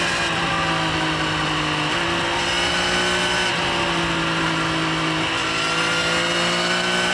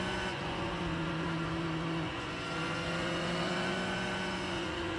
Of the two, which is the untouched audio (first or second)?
first